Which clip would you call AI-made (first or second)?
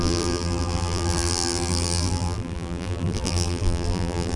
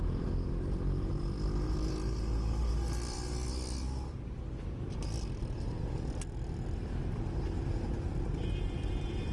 first